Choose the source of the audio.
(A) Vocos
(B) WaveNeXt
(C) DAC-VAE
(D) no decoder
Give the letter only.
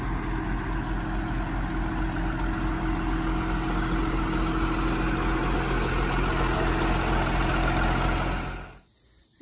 D